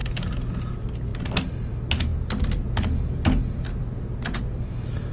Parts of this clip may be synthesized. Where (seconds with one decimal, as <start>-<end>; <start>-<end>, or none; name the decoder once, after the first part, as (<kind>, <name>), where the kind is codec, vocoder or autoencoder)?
none